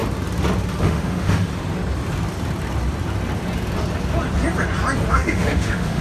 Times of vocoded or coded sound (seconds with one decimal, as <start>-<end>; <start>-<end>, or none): 0.8-1.5; 5.1-6.0